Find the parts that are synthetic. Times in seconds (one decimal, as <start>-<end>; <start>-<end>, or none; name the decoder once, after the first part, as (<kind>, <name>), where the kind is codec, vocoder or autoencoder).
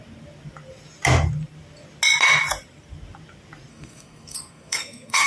3.7-5.3 (codec, SNAC)